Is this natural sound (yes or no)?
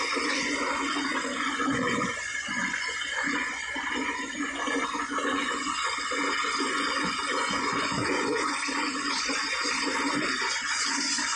no